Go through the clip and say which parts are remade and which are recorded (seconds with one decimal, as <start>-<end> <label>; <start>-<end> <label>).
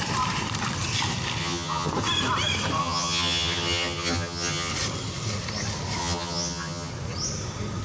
0.0-1.4 recorded; 1.4-1.9 remade; 1.9-2.8 recorded; 2.8-4.7 remade; 4.7-6.0 recorded; 6.0-6.9 remade; 6.9-7.8 recorded